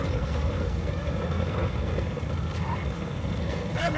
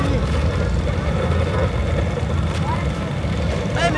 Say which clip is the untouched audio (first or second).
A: second